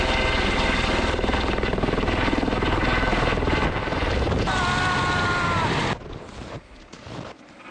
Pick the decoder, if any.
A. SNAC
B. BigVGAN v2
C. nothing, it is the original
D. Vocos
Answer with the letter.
C